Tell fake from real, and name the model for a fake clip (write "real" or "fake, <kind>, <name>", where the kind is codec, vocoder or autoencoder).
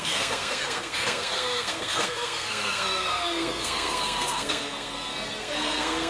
fake, codec, SNAC